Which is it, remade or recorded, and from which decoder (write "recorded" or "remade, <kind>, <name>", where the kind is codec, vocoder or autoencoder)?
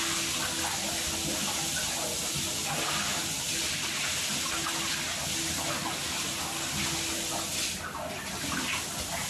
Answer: recorded